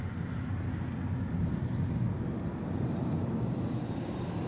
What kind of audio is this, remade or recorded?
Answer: recorded